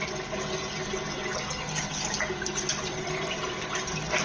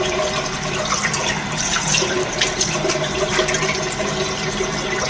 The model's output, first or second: second